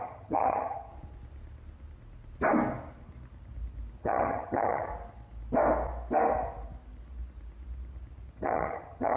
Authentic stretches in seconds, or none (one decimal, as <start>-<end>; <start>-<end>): 0.9-4.0; 4.9-8.3